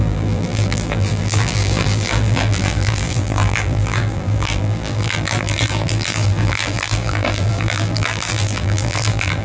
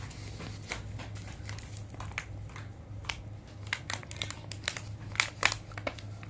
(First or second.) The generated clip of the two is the first